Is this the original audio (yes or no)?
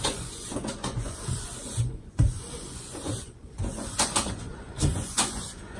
no